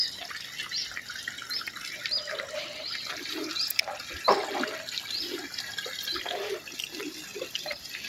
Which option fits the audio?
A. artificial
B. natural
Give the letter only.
B